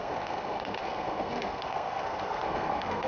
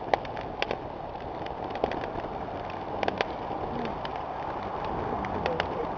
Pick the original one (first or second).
second